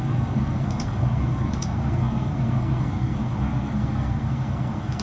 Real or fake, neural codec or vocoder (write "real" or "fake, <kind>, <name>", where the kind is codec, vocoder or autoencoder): fake, codec, SNAC